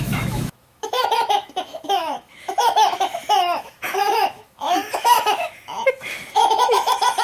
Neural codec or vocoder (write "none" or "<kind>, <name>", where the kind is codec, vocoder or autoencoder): autoencoder, DAC-VAE